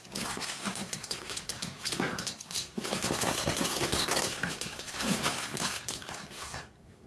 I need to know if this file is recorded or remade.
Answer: remade